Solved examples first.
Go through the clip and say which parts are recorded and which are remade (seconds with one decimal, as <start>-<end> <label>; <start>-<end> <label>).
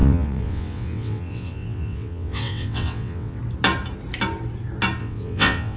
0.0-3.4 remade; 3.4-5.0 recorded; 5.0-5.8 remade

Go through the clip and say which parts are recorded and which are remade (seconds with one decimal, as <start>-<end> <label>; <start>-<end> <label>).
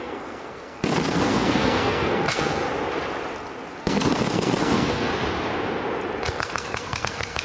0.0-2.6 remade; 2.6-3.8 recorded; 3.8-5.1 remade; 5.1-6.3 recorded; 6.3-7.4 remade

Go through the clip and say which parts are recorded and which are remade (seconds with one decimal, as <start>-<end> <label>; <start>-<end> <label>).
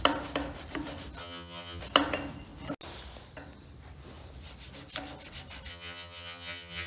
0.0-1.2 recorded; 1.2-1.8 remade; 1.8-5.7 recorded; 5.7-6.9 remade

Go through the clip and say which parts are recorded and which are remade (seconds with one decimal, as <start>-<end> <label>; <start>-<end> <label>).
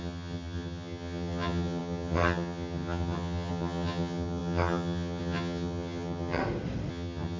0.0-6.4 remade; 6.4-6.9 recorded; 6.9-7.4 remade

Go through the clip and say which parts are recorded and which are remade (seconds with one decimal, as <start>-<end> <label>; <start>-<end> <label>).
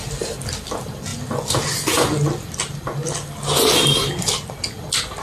0.0-5.2 recorded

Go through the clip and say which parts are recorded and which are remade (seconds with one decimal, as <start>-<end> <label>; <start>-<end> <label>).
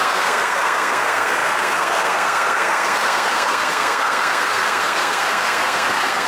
0.0-6.3 remade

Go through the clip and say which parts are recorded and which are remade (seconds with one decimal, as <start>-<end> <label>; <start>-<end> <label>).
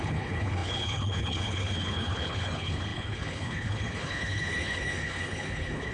0.0-5.9 remade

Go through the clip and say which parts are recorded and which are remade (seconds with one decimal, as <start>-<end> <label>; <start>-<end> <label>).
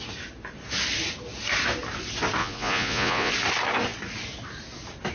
0.0-2.4 recorded; 2.4-3.3 remade; 3.3-5.1 recorded